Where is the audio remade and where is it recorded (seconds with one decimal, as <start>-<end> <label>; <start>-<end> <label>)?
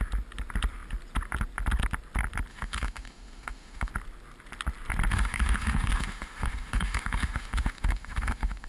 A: 0.0-2.5 recorded; 2.5-3.9 remade; 3.9-5.1 recorded; 5.1-8.7 remade